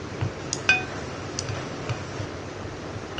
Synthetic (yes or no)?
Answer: no